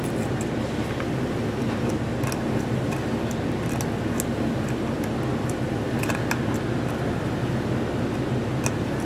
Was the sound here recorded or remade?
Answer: recorded